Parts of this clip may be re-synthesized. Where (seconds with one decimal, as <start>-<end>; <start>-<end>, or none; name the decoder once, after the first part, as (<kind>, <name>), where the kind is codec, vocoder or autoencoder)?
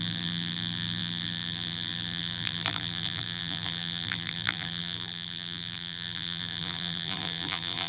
0.0-7.9 (vocoder, BigVGAN v2)